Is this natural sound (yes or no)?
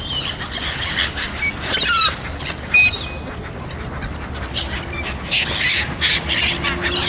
yes